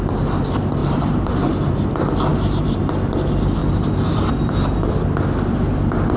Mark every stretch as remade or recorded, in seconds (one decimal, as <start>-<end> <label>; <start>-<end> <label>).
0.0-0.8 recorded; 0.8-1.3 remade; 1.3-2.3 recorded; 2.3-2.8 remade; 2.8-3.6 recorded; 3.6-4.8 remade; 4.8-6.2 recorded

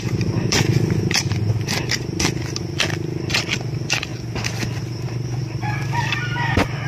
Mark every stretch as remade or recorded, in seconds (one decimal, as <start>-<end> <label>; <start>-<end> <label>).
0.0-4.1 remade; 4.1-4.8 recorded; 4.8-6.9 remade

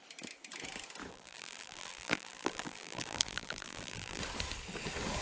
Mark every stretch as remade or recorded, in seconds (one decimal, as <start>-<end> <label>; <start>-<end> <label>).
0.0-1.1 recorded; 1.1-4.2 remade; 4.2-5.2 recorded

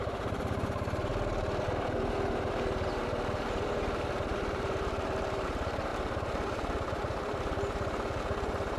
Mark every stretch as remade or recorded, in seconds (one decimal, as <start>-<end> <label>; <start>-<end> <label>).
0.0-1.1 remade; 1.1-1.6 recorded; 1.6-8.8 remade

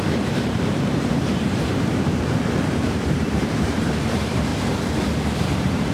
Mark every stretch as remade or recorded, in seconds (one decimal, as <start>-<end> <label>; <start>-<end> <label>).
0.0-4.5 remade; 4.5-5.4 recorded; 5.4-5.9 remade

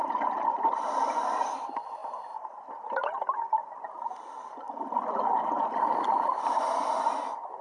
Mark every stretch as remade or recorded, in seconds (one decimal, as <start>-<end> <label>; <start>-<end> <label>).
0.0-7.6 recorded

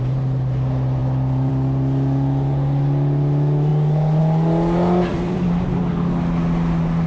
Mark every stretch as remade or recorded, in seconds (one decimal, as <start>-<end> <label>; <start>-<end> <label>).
0.0-1.0 recorded; 1.0-1.5 remade; 1.5-5.1 recorded; 5.1-5.9 remade; 5.9-7.1 recorded